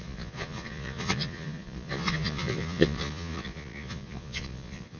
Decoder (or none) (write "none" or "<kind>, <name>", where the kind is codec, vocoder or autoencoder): vocoder, Vocos